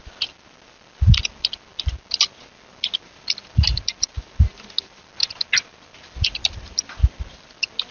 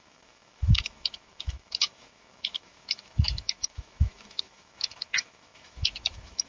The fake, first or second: second